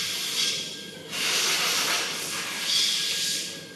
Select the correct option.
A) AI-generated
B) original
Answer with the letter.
B